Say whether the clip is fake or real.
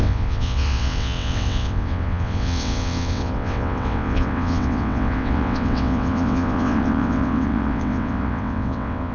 fake